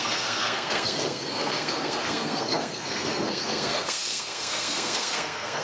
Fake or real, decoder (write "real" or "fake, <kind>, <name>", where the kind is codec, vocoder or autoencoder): fake, codec, SNAC